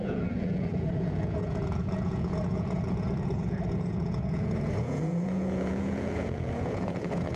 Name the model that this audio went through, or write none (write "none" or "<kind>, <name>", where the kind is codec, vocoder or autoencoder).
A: vocoder, Vocos